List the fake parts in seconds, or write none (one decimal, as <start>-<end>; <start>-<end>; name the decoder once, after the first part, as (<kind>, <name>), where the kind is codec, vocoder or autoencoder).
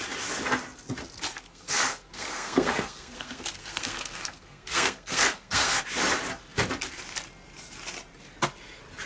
1.5-5.8 (codec, SNAC)